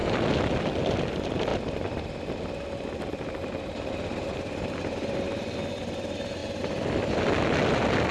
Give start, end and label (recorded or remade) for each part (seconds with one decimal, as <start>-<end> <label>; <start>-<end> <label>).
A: 0.0-1.1 recorded; 1.1-1.5 remade; 1.5-5.7 recorded; 5.7-6.4 remade; 6.4-8.1 recorded